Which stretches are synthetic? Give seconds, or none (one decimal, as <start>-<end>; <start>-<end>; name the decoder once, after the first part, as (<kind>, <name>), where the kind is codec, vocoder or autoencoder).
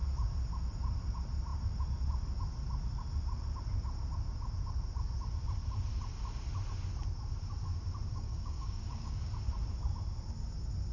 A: 8.1-9.2 (codec, DAC)